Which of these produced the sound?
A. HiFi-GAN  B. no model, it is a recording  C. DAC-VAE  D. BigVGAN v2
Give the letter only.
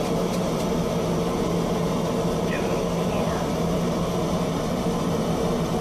B